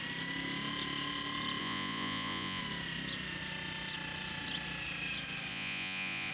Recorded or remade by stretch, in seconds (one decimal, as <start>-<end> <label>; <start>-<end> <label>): 0.0-1.6 recorded; 1.6-2.6 remade; 2.6-5.5 recorded; 5.5-6.3 remade